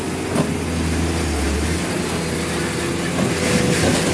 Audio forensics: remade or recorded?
recorded